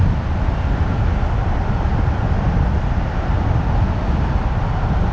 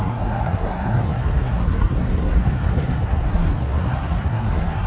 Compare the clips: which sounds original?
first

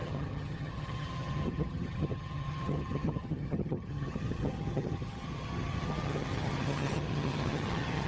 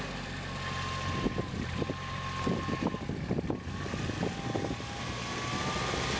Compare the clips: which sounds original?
second